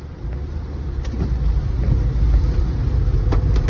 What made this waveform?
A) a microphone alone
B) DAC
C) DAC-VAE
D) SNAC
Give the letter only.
A